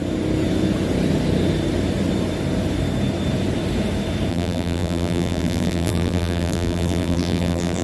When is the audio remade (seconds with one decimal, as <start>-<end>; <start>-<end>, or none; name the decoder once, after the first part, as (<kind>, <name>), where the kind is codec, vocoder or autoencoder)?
4.3-7.8 (vocoder, BigVGAN v2)